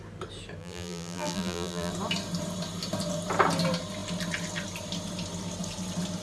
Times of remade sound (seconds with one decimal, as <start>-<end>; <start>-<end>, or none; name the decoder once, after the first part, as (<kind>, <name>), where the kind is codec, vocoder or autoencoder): 0.6-1.9 (vocoder, BigVGAN v2)